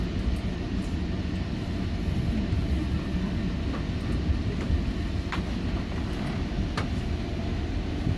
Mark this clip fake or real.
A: real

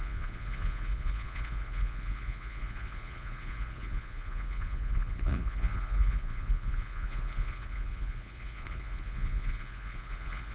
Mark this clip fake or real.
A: fake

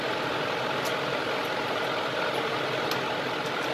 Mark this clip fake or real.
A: real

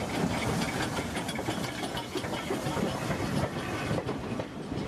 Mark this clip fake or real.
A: real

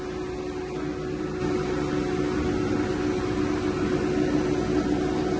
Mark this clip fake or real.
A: real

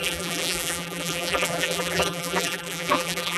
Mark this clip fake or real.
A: fake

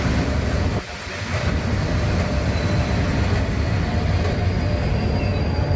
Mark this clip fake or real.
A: real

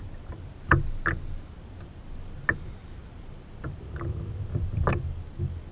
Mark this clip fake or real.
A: real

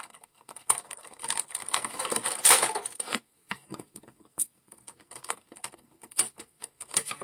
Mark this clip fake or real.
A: fake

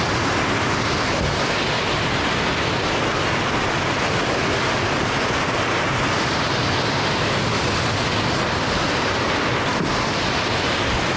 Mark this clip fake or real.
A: real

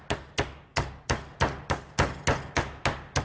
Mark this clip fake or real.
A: real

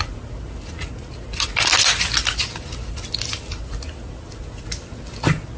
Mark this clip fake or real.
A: real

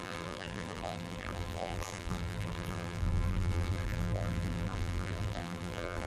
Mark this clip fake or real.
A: fake